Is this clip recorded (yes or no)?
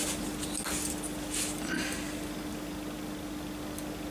yes